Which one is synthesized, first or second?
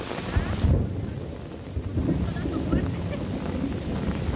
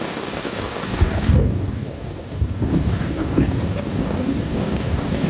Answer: second